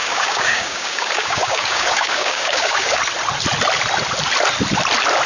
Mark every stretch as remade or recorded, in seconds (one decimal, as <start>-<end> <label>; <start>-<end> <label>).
0.0-3.0 remade; 3.0-5.3 recorded